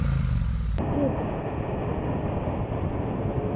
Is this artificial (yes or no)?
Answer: no